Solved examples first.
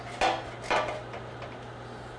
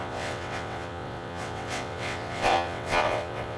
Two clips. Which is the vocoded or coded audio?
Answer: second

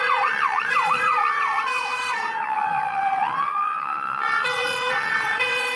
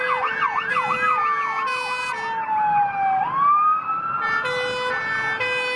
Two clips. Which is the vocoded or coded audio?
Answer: first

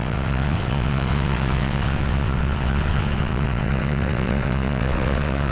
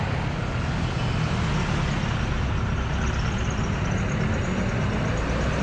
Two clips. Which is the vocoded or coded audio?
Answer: first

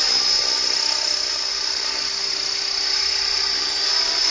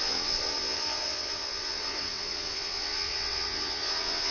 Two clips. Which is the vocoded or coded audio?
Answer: second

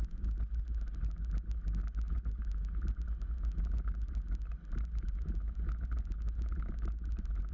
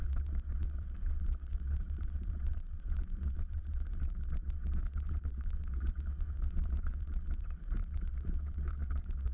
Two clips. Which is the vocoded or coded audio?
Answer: second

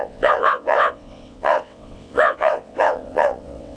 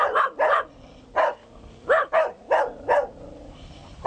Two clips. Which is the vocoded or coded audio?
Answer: first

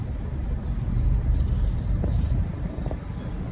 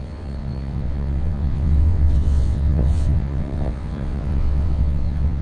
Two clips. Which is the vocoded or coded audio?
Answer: second